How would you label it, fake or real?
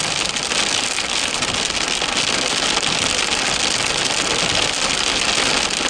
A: real